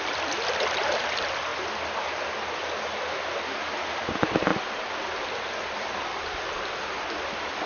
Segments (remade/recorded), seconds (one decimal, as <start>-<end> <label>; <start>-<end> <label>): 0.0-7.7 recorded